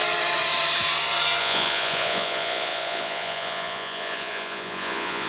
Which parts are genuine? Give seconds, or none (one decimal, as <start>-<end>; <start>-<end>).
0.0-1.4